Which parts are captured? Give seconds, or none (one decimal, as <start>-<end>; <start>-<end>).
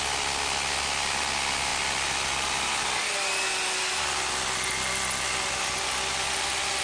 0.0-6.8